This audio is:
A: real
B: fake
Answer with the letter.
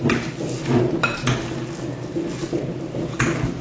A